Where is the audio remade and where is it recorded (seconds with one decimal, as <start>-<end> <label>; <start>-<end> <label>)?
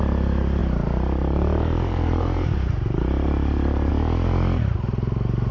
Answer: 0.0-0.6 recorded; 0.6-3.9 remade; 3.9-5.5 recorded